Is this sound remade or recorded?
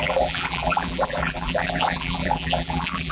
remade